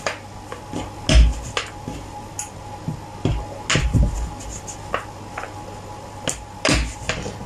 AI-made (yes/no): no